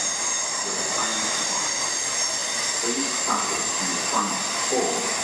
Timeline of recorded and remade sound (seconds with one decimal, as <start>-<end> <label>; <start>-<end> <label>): 0.0-2.4 recorded; 2.4-4.0 remade; 4.0-5.2 recorded

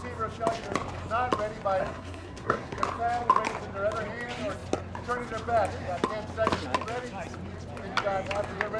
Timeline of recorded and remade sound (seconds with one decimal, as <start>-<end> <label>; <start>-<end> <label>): 0.0-1.8 recorded; 1.8-2.8 remade; 2.8-8.8 recorded

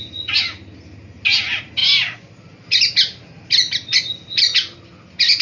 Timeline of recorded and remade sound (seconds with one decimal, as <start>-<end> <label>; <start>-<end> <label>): 0.0-5.4 recorded